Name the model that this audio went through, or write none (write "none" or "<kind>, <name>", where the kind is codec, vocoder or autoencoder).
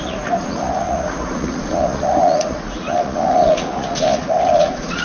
vocoder, Vocos